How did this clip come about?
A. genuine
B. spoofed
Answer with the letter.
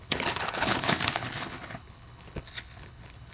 B